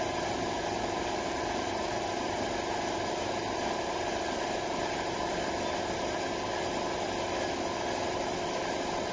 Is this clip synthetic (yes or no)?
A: no